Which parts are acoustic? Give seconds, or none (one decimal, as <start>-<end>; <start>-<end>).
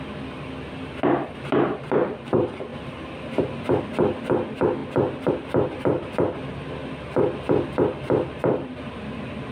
0.0-9.5